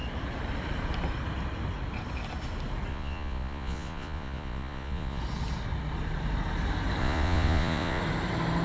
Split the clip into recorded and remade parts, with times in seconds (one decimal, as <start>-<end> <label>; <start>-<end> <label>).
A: 0.0-2.9 recorded; 2.9-5.2 remade; 5.2-7.0 recorded; 7.0-8.0 remade; 8.0-8.6 recorded